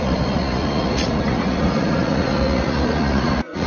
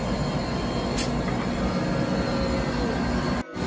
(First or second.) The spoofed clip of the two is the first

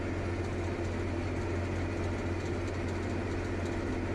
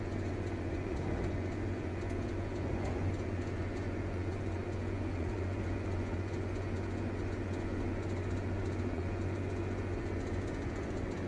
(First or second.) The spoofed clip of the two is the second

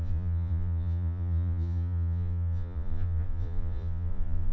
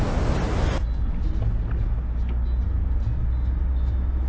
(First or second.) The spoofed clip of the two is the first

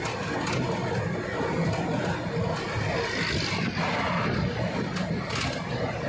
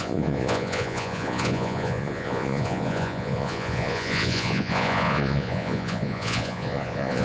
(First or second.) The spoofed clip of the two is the second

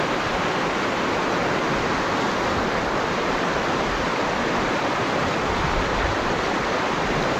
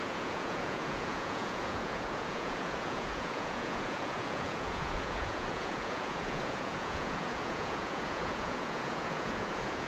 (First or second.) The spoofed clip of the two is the second